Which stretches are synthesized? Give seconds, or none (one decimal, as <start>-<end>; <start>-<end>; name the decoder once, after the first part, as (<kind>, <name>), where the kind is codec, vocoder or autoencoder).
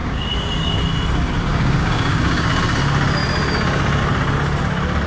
0.0-0.8 (codec, DAC); 1.5-2.5